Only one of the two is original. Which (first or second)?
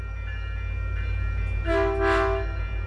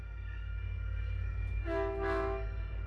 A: first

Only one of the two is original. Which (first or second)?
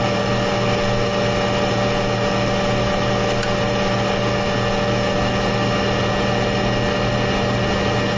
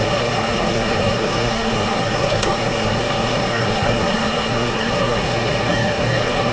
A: first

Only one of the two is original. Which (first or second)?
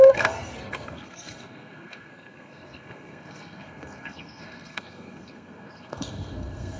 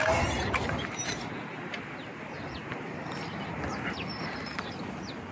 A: second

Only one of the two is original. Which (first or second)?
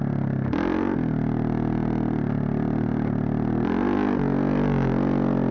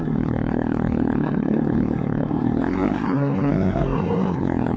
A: first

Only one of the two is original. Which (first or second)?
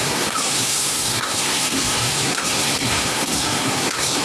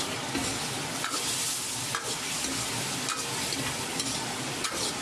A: second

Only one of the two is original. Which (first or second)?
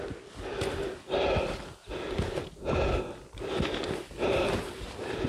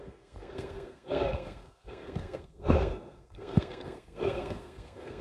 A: first